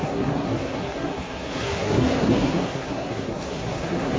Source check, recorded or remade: remade